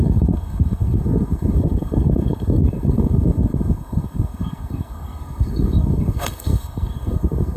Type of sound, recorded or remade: remade